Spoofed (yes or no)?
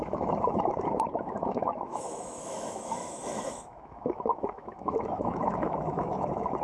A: yes